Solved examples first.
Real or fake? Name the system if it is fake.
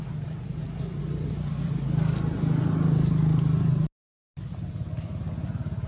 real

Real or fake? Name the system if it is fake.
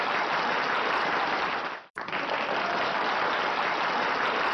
real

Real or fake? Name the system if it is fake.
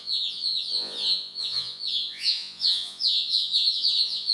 fake, vocoder, Vocos